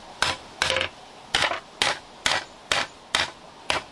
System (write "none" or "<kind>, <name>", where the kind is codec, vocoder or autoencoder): none